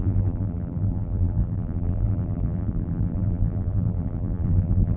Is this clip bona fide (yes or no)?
no